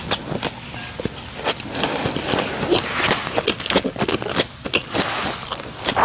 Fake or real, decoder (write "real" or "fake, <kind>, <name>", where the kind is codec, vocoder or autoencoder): real